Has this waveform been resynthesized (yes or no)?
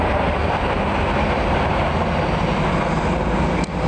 no